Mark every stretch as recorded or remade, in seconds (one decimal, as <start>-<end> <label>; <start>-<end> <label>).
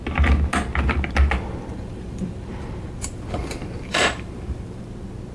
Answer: 0.0-1.7 recorded; 1.7-4.8 remade; 4.8-5.3 recorded